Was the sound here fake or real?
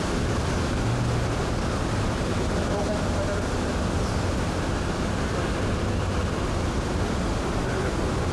real